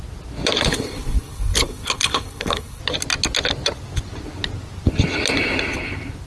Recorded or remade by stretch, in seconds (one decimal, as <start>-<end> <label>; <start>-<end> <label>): 0.0-0.7 recorded; 0.7-2.8 remade; 2.8-6.3 recorded